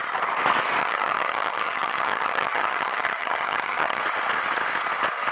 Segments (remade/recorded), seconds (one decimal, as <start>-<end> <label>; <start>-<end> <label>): 0.0-0.8 recorded; 0.8-4.0 remade; 4.0-5.3 recorded